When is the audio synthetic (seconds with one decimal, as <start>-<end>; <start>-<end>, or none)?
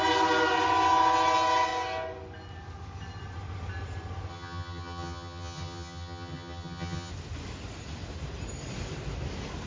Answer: 4.3-7.1